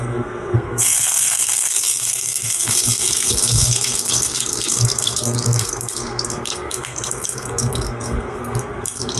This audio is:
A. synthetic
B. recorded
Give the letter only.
A